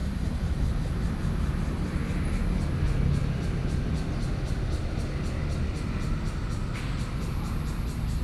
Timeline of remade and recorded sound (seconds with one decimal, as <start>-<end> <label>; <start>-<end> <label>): 0.0-0.6 remade; 0.6-8.2 recorded